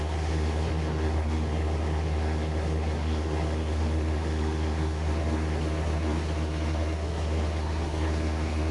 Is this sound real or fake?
fake